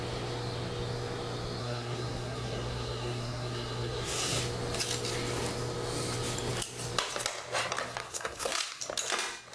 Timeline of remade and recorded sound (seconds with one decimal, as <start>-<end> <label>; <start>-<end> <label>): 0.0-1.6 recorded; 1.6-4.4 remade; 4.4-8.0 recorded; 8.0-8.8 remade; 8.8-9.5 recorded